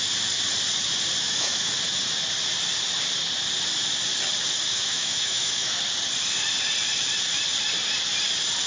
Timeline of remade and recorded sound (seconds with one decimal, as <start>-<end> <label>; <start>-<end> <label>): 0.0-1.2 recorded; 1.2-1.7 remade; 1.7-4.7 recorded; 4.7-5.8 remade; 5.8-8.7 recorded